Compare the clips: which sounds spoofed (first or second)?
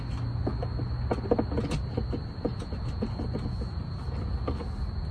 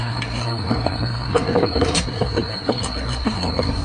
second